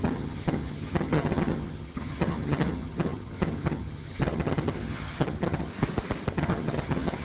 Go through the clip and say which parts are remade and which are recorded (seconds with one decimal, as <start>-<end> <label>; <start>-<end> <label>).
0.0-5.7 remade; 5.7-6.3 recorded; 6.3-7.2 remade